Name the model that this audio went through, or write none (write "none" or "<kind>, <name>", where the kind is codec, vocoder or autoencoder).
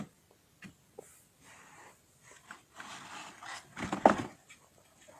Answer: none